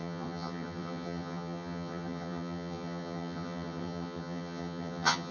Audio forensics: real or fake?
fake